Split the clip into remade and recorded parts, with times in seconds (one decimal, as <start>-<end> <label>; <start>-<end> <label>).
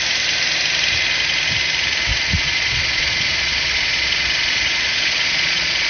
0.0-2.1 recorded; 2.1-5.9 remade